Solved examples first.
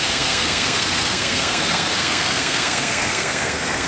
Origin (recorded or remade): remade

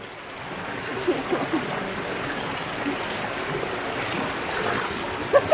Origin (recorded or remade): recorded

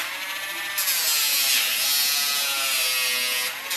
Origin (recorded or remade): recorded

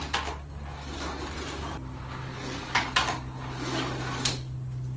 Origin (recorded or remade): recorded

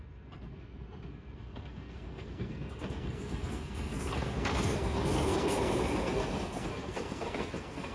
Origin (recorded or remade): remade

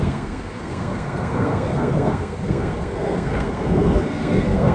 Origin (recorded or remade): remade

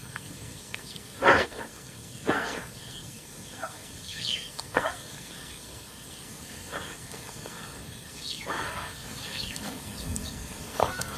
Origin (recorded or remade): remade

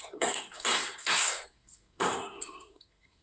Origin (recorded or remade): remade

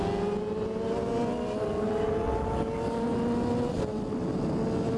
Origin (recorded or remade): recorded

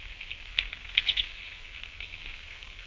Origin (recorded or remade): remade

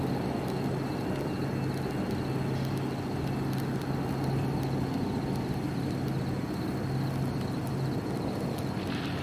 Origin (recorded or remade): recorded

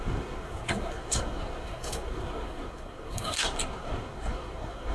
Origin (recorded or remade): remade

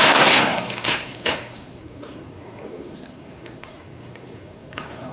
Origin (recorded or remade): remade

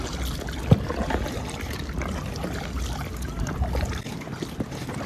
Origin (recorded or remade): recorded